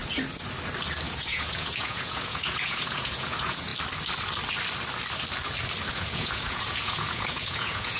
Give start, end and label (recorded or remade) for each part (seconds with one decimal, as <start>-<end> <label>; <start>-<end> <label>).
0.0-1.1 recorded; 1.1-3.7 remade; 3.7-5.9 recorded; 5.9-8.0 remade